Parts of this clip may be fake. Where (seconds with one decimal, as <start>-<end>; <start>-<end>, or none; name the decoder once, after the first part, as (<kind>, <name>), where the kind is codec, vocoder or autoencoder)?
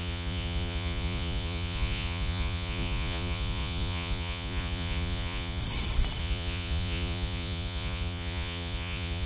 0.0-5.6 (vocoder, Vocos); 6.2-9.3